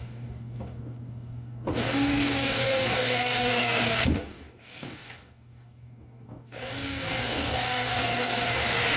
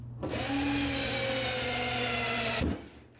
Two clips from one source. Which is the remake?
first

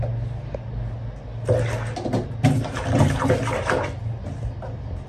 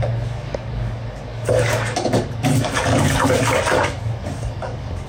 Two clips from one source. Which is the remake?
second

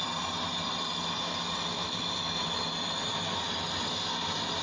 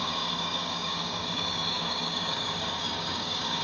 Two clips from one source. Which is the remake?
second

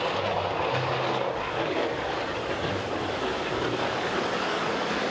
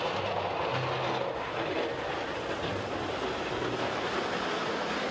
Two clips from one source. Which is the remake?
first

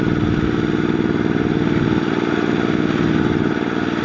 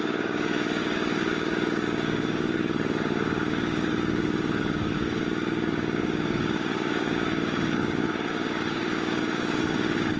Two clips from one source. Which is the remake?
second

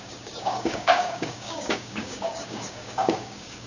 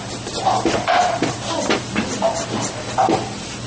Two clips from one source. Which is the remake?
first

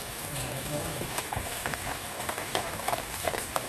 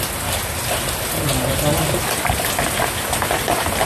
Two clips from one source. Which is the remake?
first